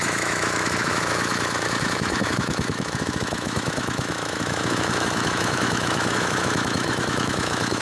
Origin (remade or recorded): remade